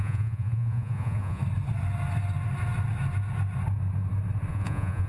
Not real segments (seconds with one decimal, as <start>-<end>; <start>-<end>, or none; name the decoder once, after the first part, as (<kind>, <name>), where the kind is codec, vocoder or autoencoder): 0.0-1.4 (vocoder, Vocos); 4.5-5.1